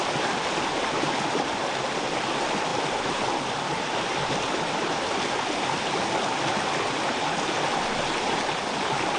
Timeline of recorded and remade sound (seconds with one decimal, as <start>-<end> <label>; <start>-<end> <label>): 0.0-2.7 recorded; 2.7-7.7 remade; 7.7-9.2 recorded